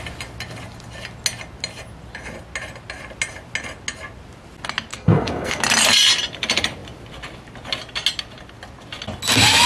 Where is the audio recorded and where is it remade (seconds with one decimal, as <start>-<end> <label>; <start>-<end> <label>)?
0.0-4.9 recorded; 4.9-5.6 remade; 5.6-9.7 recorded